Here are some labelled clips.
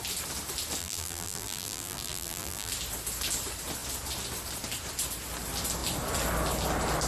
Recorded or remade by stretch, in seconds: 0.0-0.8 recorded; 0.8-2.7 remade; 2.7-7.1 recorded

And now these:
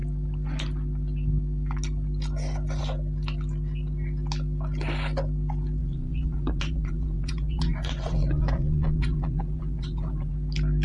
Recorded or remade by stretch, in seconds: 0.0-5.8 recorded; 5.8-10.3 remade; 10.3-10.8 recorded

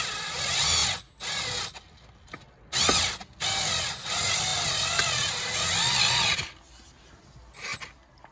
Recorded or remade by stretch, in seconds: 0.0-8.3 recorded

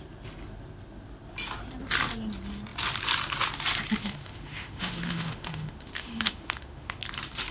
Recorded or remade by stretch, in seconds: 0.0-4.0 recorded; 4.0-7.0 remade; 7.0-7.5 recorded

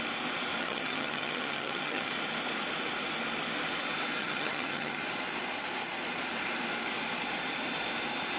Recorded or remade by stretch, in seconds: 0.0-0.6 recorded; 0.6-2.1 remade; 2.1-4.2 recorded; 4.2-5.0 remade; 5.0-8.4 recorded

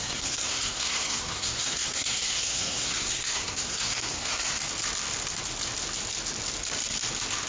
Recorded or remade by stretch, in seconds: 0.0-4.6 remade; 4.6-7.5 recorded

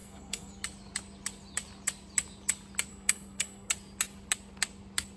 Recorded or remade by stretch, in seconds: 0.0-0.5 remade; 0.5-2.9 recorded; 2.9-3.7 remade; 3.7-5.2 recorded